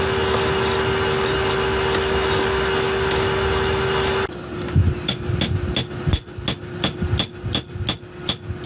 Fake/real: real